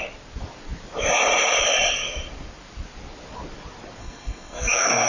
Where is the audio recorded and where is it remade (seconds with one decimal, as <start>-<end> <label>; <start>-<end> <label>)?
0.0-4.0 recorded; 4.0-5.1 remade